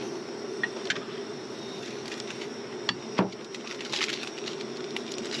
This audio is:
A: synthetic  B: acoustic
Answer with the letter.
B